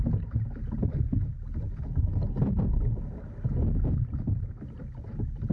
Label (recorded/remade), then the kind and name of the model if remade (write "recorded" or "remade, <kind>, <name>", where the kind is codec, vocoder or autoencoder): recorded